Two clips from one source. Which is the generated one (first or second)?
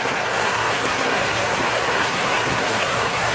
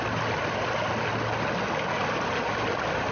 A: first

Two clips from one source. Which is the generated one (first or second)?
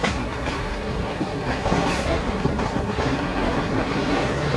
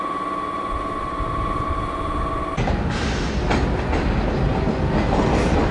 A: first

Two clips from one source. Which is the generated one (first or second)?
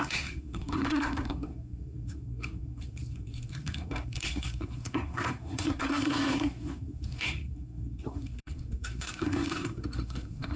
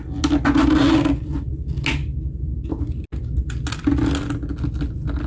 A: first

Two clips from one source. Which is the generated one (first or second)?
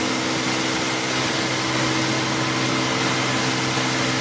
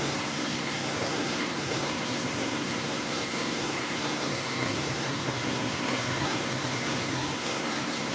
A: second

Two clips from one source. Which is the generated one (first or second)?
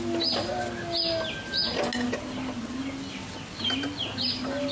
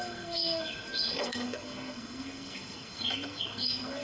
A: second